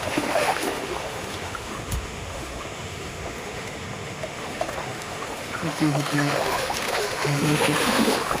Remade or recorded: remade